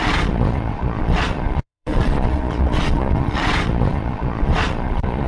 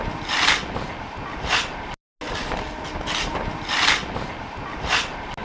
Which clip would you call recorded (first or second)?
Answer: second